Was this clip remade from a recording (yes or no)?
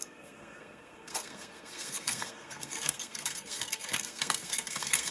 yes